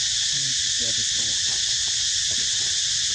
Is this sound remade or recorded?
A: recorded